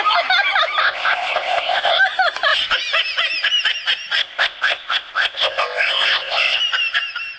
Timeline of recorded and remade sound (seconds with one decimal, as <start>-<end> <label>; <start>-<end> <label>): 0.0-0.8 recorded; 0.8-2.0 remade; 2.0-4.2 recorded; 4.2-6.6 remade; 6.6-7.4 recorded